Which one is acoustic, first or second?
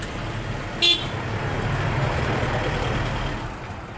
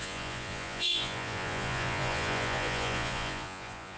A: first